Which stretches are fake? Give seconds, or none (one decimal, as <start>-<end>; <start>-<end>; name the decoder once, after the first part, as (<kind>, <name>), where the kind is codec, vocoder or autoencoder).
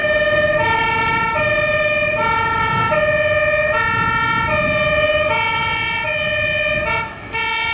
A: 0.0-2.6 (vocoder, BigVGAN v2)